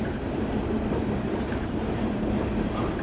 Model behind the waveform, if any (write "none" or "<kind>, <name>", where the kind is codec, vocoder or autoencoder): vocoder, BigVGAN v2